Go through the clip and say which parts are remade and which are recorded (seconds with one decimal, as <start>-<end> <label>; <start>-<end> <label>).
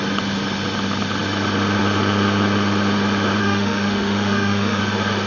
0.0-3.4 recorded; 3.4-4.8 remade; 4.8-5.3 recorded